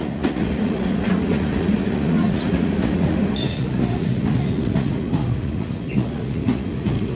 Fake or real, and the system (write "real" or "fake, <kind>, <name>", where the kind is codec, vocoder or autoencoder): fake, vocoder, Vocos